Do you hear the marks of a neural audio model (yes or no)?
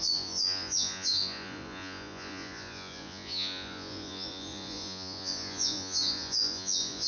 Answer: yes